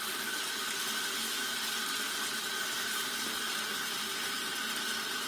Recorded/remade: recorded